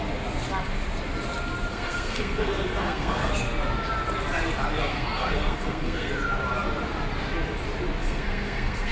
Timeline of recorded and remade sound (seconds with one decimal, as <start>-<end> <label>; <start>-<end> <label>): 0.0-1.7 recorded; 1.7-3.3 remade; 3.3-4.9 recorded; 4.9-6.1 remade; 6.1-8.0 recorded; 8.0-8.9 remade

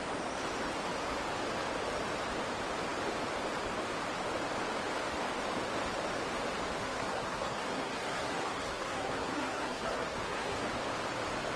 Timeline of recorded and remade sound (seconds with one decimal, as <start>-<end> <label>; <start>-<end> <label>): 0.0-6.8 recorded; 6.8-10.6 remade; 10.6-11.6 recorded

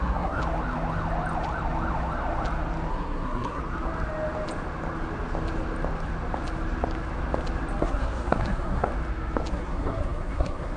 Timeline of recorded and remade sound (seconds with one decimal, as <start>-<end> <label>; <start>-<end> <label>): 0.0-0.4 remade; 0.4-2.9 recorded; 2.9-3.6 remade; 3.6-7.8 recorded; 7.8-8.9 remade; 8.9-9.5 recorded; 9.5-10.8 remade

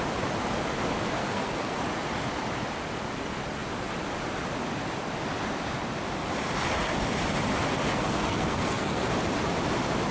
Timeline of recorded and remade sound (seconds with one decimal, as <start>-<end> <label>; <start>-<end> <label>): 0.0-1.2 recorded; 1.2-1.8 remade; 1.8-7.9 recorded; 7.9-9.1 remade; 9.1-10.1 recorded

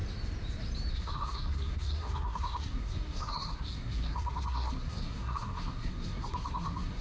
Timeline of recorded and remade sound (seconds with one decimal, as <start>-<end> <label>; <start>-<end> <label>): 0.0-0.9 recorded; 0.9-7.0 remade

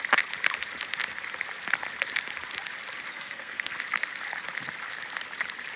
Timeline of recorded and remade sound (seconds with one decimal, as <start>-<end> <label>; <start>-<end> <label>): 0.0-3.1 recorded; 3.1-3.7 remade; 3.7-5.8 recorded

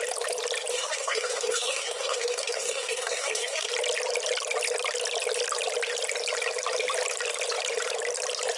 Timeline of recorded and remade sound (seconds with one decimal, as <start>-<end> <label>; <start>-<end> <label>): 0.0-0.7 recorded; 0.7-3.7 remade; 3.7-8.6 recorded